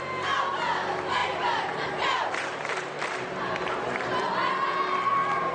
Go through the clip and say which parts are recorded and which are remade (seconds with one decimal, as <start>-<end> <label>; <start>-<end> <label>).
0.0-1.2 recorded; 1.2-4.5 remade; 4.5-5.5 recorded